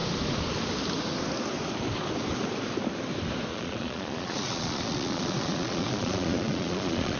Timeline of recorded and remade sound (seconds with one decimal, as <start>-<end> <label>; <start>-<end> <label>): 0.0-3.5 recorded; 3.5-7.2 remade